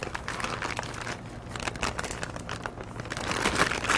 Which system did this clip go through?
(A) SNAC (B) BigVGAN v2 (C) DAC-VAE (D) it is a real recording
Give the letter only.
D